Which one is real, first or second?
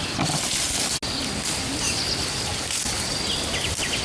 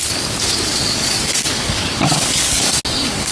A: first